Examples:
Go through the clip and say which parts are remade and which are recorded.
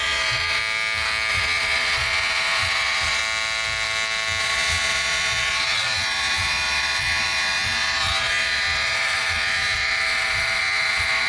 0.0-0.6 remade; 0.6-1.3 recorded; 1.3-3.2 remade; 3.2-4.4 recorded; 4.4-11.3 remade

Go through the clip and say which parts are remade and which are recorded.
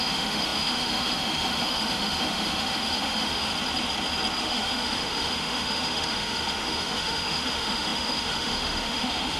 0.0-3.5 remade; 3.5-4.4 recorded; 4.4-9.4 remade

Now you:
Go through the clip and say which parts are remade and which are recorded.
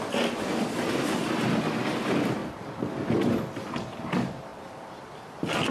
0.0-4.5 recorded; 4.5-5.2 remade; 5.2-5.7 recorded